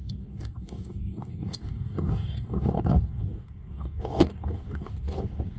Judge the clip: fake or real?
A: fake